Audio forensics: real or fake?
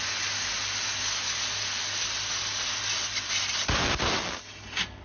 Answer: real